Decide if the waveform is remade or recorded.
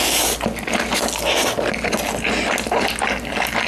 recorded